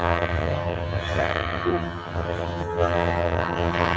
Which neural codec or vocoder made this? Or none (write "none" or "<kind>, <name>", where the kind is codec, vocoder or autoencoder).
vocoder, HiFi-GAN